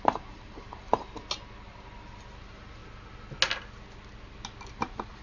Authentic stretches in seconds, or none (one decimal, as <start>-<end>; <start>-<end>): 0.9-2.4; 2.8-4.7